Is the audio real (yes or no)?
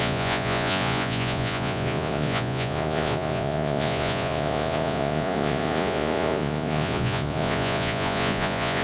no